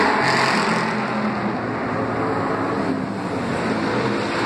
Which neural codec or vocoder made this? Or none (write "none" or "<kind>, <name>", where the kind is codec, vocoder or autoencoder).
none